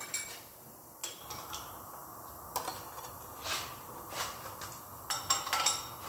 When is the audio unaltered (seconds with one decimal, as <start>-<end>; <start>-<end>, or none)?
0.0-6.1

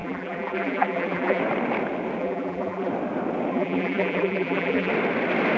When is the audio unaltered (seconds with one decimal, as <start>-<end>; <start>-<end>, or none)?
1.4-2.2; 2.9-3.5; 4.9-5.6

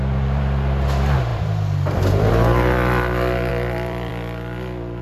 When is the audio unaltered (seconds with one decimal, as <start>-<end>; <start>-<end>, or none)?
0.0-1.3; 2.3-3.5; 4.1-5.0

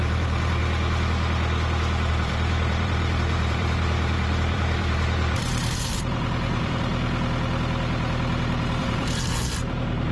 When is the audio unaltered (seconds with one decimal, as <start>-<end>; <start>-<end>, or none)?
0.6-2.1; 6.9-8.8